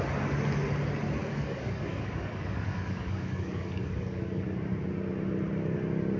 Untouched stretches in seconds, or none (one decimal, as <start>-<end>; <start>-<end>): 0.0-1.2; 4.4-6.2